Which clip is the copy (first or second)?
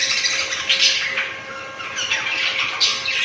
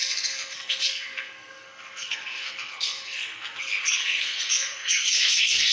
second